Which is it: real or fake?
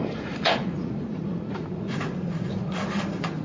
fake